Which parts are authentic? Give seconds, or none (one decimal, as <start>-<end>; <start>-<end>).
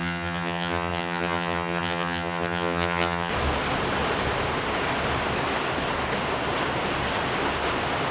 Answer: 3.3-8.1